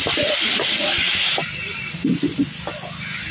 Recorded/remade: recorded